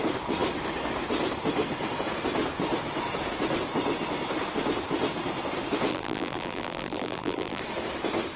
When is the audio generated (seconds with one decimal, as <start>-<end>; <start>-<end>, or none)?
5.9-7.6